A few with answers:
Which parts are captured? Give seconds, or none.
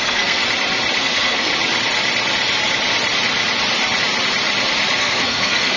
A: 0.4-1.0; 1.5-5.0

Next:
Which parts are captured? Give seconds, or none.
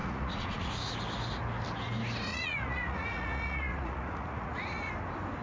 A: 1.0-2.3; 4.9-5.4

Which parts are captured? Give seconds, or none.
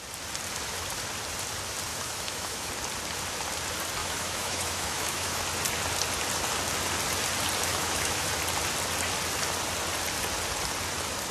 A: 0.0-1.9; 2.7-4.0; 5.4-7.7; 8.3-11.3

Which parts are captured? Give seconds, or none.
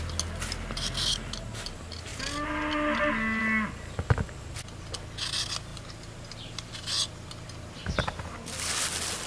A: 0.0-5.7; 6.7-9.3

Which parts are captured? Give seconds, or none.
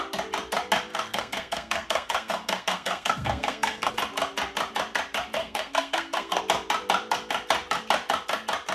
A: 0.0-0.9; 3.9-5.4; 6.4-8.7